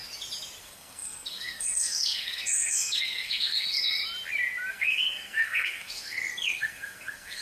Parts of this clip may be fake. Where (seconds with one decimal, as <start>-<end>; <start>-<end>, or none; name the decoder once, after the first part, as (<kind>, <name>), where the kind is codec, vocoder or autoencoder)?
0.6-4.0 (codec, SNAC); 4.7-7.4